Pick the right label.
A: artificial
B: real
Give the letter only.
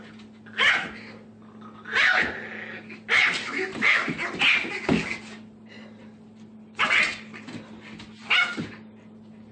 B